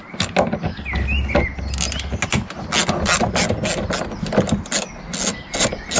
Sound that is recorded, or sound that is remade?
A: recorded